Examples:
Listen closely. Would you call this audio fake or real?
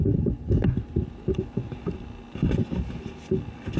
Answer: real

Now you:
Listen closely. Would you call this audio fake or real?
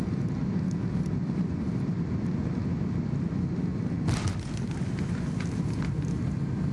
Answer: real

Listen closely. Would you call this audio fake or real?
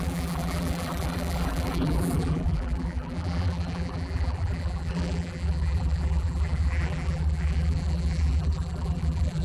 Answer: fake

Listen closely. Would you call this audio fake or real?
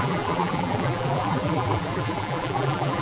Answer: fake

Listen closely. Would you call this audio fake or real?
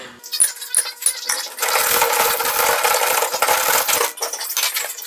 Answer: real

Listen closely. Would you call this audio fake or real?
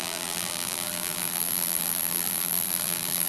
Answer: fake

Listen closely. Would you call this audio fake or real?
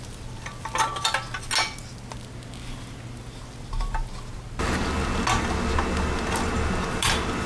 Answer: real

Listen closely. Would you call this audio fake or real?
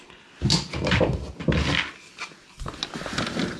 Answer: real